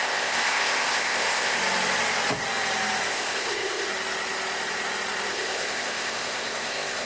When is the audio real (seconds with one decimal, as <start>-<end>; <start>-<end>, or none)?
1.6-3.1; 3.9-5.3